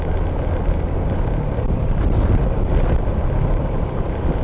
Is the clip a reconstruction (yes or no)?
no